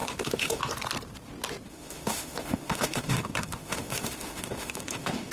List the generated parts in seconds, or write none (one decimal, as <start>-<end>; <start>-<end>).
0.0-0.6; 1.7-5.3